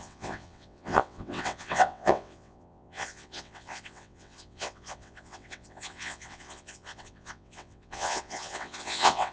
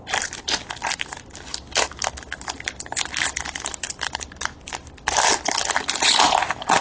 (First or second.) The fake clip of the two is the first